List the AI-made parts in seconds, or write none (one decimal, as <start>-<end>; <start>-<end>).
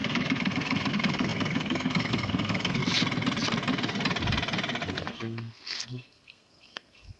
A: 0.0-2.8; 4.9-7.2